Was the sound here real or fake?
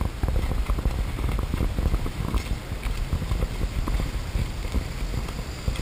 real